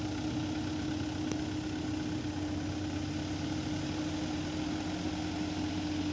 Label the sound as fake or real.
real